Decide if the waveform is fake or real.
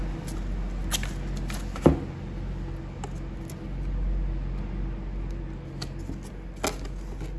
real